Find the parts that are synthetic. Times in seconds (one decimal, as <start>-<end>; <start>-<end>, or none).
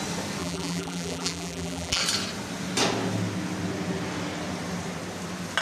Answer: 0.4-2.0